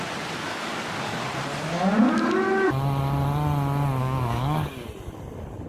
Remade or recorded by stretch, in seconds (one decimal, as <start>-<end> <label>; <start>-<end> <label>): 0.0-0.5 recorded; 0.5-1.2 remade; 1.2-4.0 recorded; 4.0-4.7 remade; 4.7-5.7 recorded